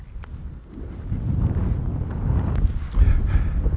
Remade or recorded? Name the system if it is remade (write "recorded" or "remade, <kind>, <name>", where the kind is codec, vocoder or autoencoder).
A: recorded